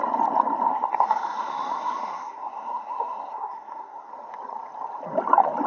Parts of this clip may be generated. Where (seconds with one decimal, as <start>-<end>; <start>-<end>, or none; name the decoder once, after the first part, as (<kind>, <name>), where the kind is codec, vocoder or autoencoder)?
0.7-4.1 (codec, SNAC)